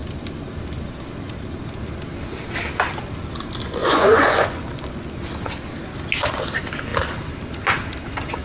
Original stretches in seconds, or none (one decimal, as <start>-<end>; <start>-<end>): 0.0-3.8; 5.2-8.4